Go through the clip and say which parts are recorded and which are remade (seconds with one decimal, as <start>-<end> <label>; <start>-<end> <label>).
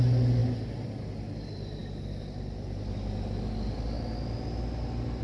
0.0-5.2 recorded